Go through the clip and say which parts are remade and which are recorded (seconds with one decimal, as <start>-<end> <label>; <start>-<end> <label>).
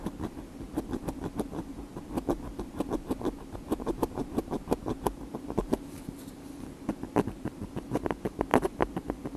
0.0-9.4 recorded